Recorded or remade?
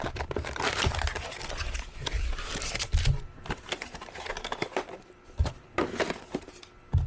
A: recorded